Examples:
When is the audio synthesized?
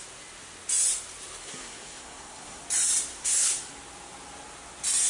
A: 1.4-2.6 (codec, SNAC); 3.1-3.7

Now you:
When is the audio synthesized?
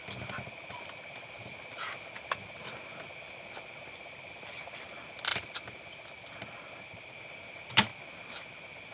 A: none